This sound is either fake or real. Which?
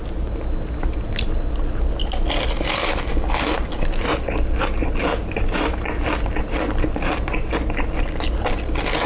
real